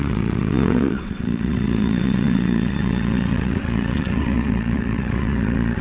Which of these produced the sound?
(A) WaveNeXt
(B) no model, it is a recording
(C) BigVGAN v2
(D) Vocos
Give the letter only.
A